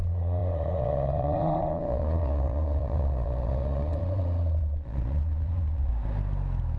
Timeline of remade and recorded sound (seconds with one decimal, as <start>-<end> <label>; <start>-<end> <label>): 0.0-5.9 remade; 5.9-6.8 recorded